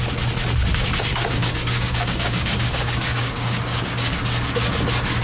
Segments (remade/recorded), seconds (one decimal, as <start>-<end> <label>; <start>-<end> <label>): 0.0-1.1 recorded; 1.1-4.2 remade; 4.2-5.2 recorded